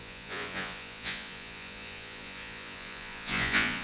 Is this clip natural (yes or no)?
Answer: no